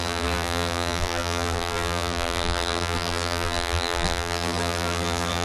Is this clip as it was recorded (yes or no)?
no